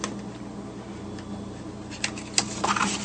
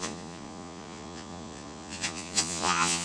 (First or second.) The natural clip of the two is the first